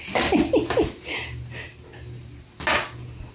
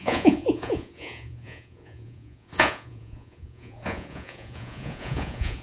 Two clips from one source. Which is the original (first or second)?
first